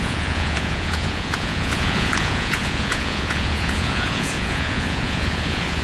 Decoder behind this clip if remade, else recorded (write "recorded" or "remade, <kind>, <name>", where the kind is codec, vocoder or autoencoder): remade, vocoder, Vocos